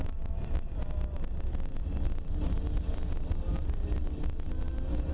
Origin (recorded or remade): recorded